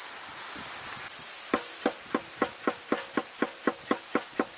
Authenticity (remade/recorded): recorded